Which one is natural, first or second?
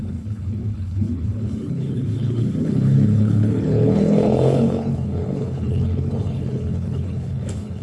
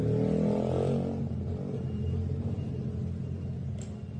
second